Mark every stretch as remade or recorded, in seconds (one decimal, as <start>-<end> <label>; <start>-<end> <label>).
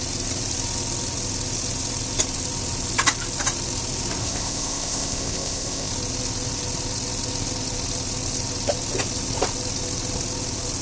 0.0-4.2 recorded; 4.2-5.9 remade; 5.9-10.8 recorded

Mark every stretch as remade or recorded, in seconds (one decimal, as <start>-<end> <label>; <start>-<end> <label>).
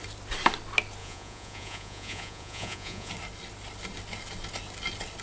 0.0-1.0 recorded; 1.0-3.1 remade; 3.1-5.2 recorded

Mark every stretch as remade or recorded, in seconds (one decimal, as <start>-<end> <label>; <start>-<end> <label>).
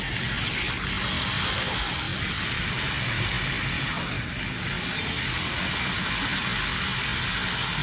0.0-7.8 recorded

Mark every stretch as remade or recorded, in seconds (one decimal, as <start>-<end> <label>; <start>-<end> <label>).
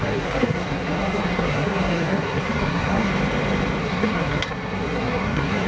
0.0-3.1 remade; 3.1-3.8 recorded; 3.8-5.7 remade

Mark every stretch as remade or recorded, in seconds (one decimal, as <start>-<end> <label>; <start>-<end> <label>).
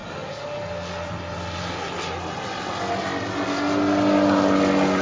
0.0-5.0 recorded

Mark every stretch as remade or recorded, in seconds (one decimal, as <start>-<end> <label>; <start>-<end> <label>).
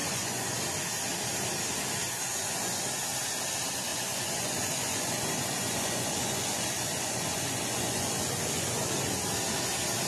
0.0-0.5 remade; 0.5-2.3 recorded; 2.3-2.8 remade; 2.8-3.9 recorded; 3.9-8.9 remade; 8.9-10.1 recorded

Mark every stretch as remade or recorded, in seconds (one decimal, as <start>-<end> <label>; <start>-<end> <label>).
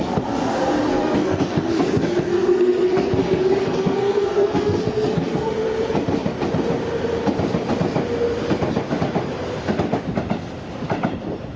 0.0-0.9 recorded; 0.9-5.5 remade; 5.5-11.6 recorded